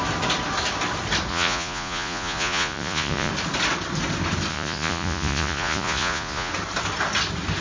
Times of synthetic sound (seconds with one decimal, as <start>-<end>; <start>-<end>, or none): 1.3-3.3; 4.5-6.5

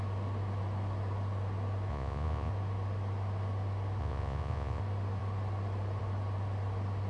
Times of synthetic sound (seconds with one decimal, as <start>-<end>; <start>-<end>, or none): 1.9-2.5; 4.0-4.8

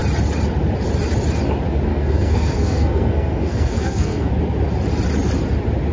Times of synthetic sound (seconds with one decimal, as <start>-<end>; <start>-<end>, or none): 1.9-4.3